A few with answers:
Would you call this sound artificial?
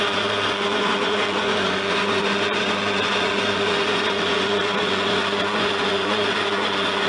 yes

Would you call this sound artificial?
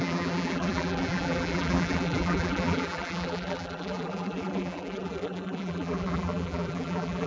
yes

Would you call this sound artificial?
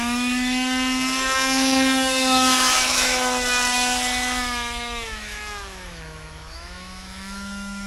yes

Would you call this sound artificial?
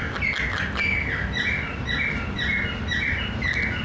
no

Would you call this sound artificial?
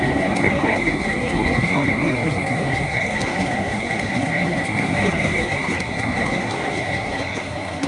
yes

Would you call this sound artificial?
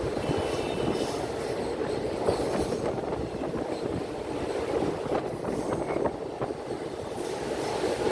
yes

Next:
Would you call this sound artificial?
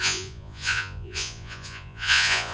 yes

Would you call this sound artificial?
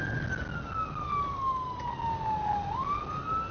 no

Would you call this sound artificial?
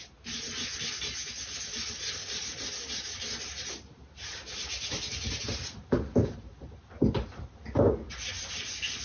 no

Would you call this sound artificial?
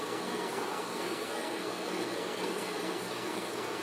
yes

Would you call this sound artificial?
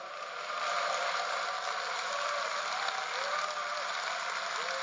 no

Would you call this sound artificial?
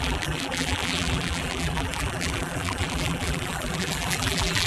yes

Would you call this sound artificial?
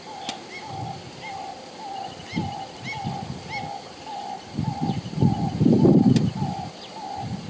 no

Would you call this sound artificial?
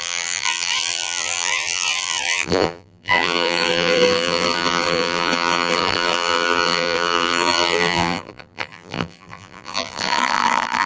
yes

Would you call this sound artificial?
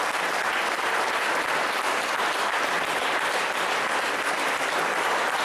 no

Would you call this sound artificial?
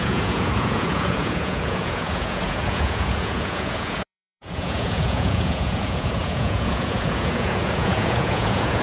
yes